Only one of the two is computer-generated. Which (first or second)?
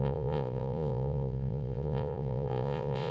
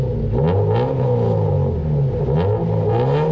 first